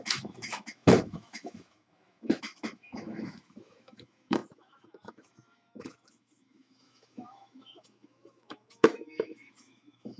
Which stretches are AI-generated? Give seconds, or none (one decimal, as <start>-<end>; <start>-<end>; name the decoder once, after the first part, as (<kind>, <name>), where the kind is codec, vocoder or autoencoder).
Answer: 0.0-10.2 (autoencoder, DAC-VAE)